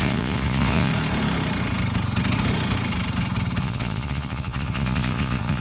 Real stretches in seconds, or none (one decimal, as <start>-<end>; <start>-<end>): 0.9-3.6